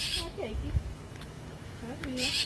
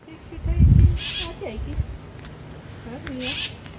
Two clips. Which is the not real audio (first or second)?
first